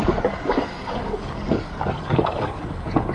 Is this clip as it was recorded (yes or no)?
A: no